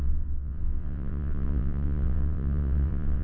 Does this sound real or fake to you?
fake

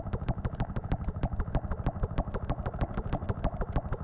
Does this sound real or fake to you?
real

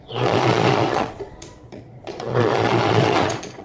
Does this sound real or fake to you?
fake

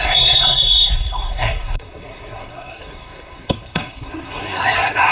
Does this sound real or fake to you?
fake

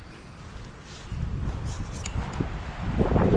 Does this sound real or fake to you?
real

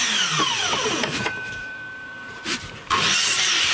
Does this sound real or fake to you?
fake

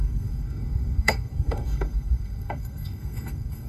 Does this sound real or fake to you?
fake